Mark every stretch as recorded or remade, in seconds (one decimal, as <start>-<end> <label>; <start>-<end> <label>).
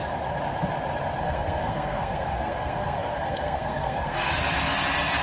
0.0-1.2 recorded; 1.2-4.3 remade; 4.3-5.2 recorded